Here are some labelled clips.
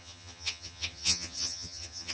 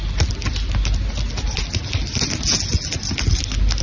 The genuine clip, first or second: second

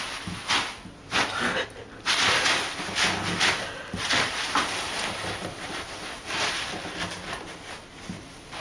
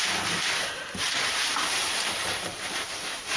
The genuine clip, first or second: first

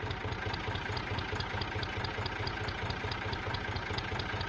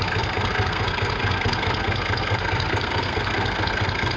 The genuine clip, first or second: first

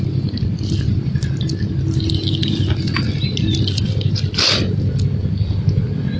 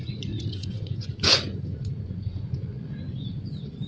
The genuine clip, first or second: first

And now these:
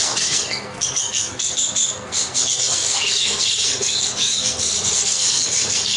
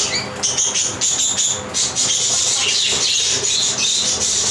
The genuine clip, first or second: second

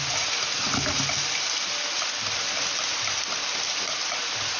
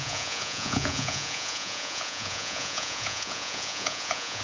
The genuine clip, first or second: first